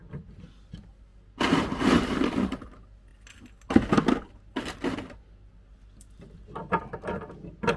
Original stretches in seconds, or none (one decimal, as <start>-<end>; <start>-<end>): 0.0-7.8